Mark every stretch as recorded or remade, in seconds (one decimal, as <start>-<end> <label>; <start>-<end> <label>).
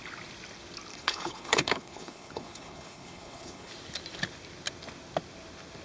0.0-0.9 recorded; 0.9-3.7 remade; 3.7-5.8 recorded